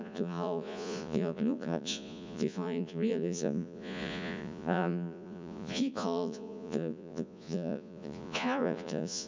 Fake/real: fake